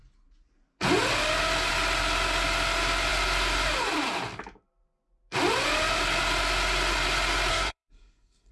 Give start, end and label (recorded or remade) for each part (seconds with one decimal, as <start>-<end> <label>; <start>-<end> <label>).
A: 0.0-7.5 recorded; 7.5-8.5 remade